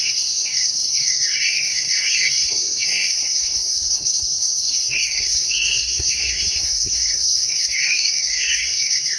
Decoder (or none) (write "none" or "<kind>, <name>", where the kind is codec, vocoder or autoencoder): codec, SNAC